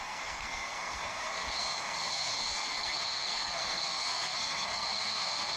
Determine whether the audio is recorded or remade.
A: remade